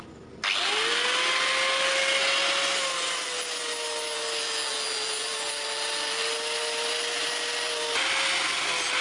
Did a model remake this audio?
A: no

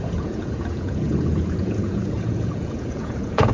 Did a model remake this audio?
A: yes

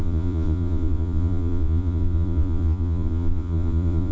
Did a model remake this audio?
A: yes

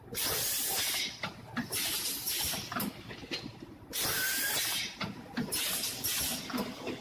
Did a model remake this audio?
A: no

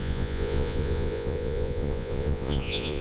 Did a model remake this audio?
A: yes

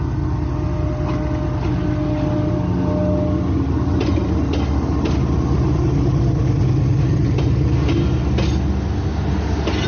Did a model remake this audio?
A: no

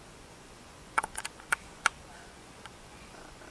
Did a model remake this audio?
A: yes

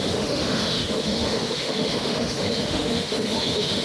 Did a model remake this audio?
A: yes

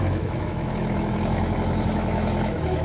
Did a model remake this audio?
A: yes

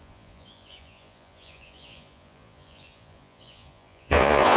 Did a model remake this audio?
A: yes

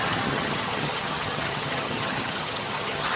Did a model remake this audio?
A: yes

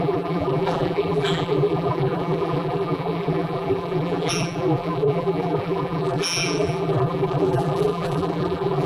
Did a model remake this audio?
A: yes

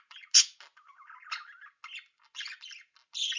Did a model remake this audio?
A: no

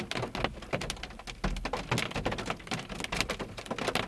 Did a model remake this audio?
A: no